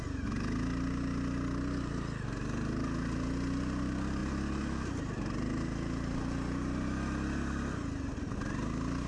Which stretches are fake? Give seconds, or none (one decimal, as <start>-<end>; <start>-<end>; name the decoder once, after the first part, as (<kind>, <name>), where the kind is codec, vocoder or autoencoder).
none